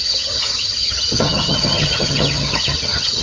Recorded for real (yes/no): no